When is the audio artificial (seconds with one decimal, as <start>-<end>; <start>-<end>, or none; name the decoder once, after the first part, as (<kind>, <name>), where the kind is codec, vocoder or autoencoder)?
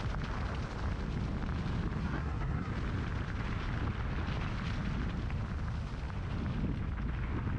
2.0-2.7 (codec, SNAC)